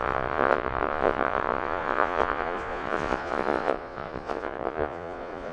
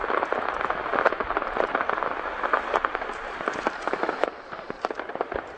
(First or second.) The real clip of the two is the second